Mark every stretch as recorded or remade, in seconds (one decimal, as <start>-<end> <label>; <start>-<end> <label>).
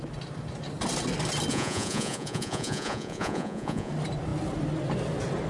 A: 0.0-1.5 recorded; 1.5-3.9 remade; 3.9-5.5 recorded